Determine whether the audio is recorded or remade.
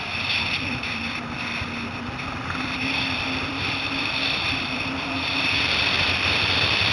remade